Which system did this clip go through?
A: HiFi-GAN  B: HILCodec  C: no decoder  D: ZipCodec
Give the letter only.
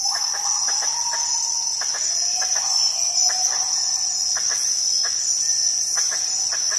C